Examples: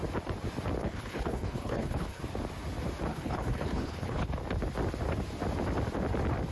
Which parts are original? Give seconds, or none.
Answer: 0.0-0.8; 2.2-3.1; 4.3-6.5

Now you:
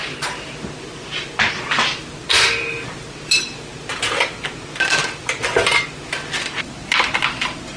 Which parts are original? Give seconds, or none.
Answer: 0.0-7.8

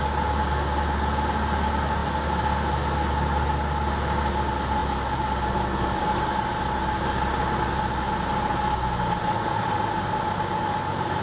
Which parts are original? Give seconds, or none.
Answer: 0.0-11.2

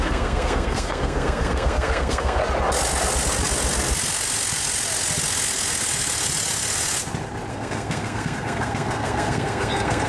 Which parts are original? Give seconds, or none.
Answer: 2.4-7.5